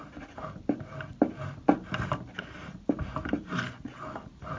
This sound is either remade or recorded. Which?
recorded